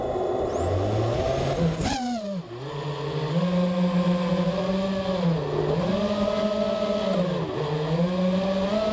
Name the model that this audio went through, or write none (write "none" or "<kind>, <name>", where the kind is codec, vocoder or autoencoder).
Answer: none